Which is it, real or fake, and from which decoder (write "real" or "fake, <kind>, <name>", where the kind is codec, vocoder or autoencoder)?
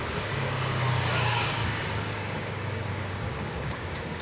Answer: fake, codec, DAC